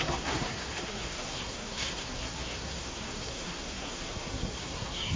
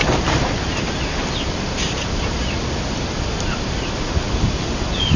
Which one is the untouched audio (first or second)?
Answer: second